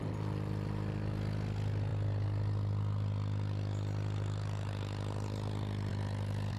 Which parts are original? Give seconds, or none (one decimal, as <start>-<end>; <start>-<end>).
0.0-6.6